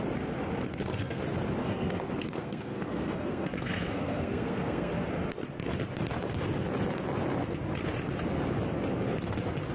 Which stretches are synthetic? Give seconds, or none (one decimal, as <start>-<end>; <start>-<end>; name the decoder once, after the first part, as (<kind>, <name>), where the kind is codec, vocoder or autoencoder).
0.7-1.2 (codec, SNAC); 1.6-4.9